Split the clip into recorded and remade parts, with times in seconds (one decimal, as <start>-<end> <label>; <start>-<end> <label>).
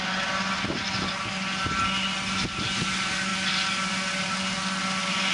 0.0-5.3 recorded